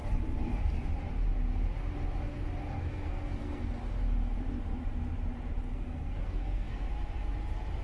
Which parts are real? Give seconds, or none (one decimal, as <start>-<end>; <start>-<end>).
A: 0.0-2.7; 3.7-5.7; 6.9-7.8

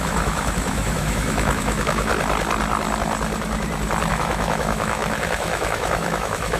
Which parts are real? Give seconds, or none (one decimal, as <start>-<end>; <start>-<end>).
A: 2.1-4.1

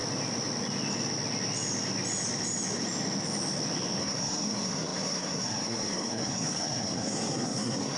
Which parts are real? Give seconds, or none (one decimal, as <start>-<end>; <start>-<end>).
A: 0.0-4.0

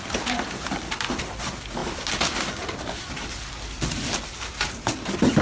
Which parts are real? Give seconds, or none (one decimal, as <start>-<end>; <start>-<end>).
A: 0.0-5.4

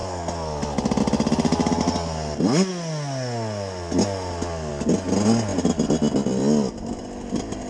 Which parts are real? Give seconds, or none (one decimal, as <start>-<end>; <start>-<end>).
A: 0.0-7.7

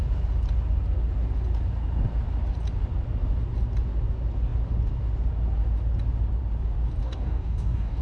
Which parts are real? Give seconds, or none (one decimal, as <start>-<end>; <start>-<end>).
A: 0.0-7.0

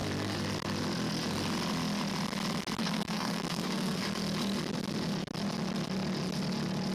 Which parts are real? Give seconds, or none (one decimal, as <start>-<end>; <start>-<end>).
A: 0.0-2.8; 4.0-6.9

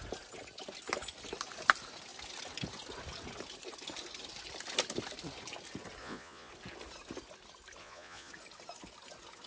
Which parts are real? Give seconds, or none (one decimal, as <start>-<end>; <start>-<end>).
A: 0.0-6.0; 6.5-7.8; 8.3-9.5